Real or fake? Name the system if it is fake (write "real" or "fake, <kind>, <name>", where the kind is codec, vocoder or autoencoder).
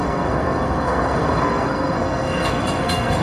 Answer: fake, codec, SNAC